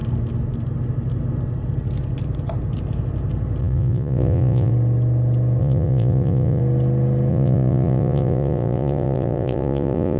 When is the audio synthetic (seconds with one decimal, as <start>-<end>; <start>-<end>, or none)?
3.6-4.7; 5.6-6.6; 7.3-10.2